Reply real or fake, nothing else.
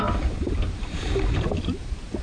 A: real